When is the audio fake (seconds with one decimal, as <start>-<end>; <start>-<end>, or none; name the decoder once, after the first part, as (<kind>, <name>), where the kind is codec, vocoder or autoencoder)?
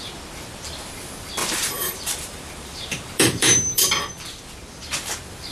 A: 1.4-3.8 (vocoder, BigVGAN v2)